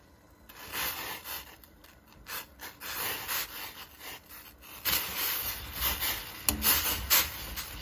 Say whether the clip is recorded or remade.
recorded